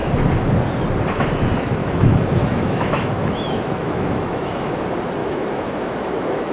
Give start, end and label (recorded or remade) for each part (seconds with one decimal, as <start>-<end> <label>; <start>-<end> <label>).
0.0-1.8 recorded; 1.8-4.8 remade; 4.8-5.2 recorded; 5.2-6.5 remade